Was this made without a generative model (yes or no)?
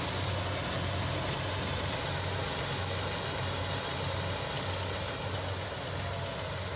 yes